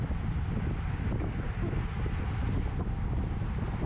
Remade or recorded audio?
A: recorded